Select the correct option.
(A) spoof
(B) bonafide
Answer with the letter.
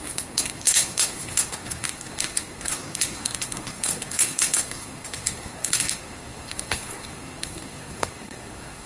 A